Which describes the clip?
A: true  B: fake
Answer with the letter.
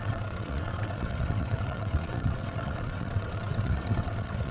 B